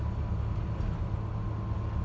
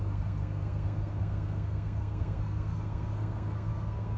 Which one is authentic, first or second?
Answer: first